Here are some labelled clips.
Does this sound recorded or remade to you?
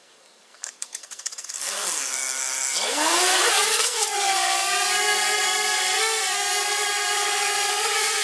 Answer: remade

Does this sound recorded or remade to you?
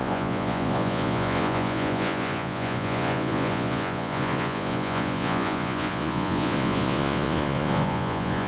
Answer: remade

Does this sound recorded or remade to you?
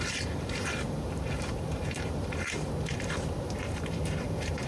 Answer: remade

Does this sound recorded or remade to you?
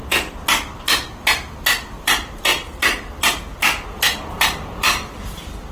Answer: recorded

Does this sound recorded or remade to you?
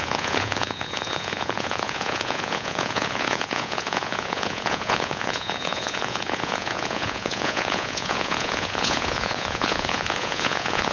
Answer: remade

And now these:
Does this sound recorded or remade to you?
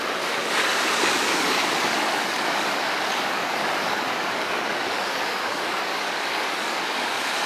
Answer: remade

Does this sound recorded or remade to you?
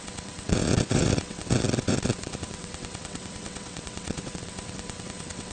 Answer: remade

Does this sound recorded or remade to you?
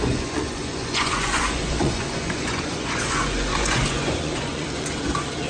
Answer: remade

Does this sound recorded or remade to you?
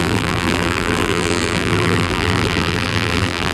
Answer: remade